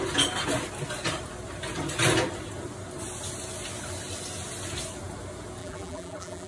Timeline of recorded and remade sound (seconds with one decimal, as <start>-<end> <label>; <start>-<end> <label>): 0.0-5.6 recorded; 5.6-6.5 remade

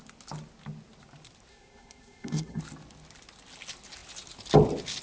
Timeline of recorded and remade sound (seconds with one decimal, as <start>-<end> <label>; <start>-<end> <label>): 0.0-1.5 recorded; 1.5-2.6 remade; 2.6-5.0 recorded

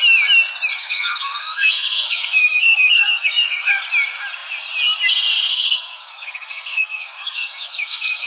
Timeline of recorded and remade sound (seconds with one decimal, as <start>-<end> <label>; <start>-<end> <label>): 0.0-0.8 recorded; 0.8-3.8 remade; 3.8-5.5 recorded; 5.5-8.3 remade